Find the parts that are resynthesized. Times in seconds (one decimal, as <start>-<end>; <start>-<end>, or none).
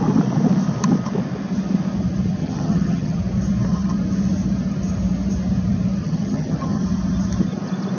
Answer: 2.4-3.2; 6.0-6.8